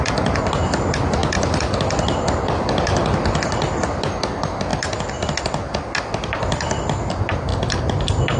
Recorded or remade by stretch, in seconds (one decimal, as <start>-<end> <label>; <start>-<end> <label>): 0.0-8.4 recorded